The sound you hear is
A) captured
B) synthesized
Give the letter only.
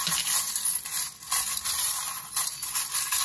A